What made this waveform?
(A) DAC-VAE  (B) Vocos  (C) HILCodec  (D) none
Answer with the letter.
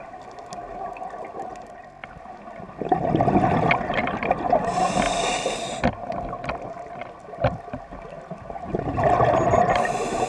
D